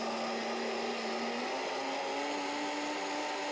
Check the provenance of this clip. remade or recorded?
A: recorded